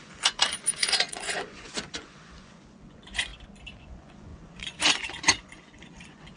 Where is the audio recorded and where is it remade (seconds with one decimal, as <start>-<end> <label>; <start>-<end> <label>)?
0.0-3.3 remade; 3.3-3.8 recorded; 3.8-6.4 remade